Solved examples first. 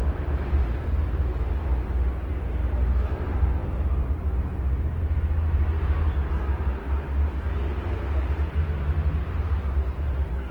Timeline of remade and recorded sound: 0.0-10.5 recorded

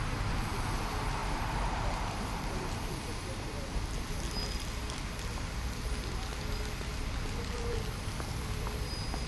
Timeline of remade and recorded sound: 0.0-1.2 recorded; 1.2-2.9 remade; 2.9-9.3 recorded

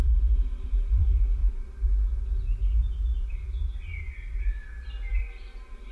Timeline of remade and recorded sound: 0.0-1.4 remade; 1.4-4.9 recorded; 4.9-5.9 remade

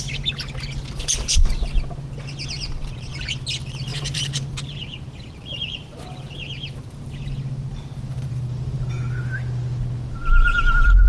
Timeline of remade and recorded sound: 0.0-3.9 recorded; 3.9-7.3 remade; 7.3-7.7 recorded; 7.7-8.3 remade; 8.3-11.1 recorded

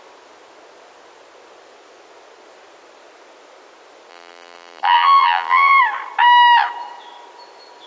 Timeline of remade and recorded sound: 0.0-4.1 recorded; 4.1-5.8 remade; 5.8-7.9 recorded

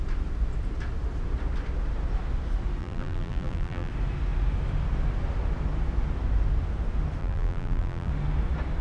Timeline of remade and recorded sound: 0.0-2.8 recorded; 2.8-3.9 remade; 3.9-7.2 recorded; 7.2-8.1 remade; 8.1-8.8 recorded

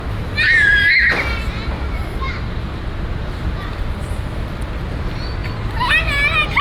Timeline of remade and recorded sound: 0.0-6.6 recorded

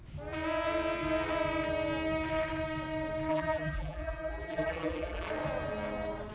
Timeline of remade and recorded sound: 0.0-3.3 recorded; 3.3-5.3 remade; 5.3-6.3 recorded